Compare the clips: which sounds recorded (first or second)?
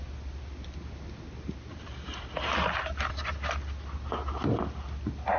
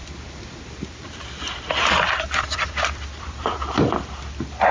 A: first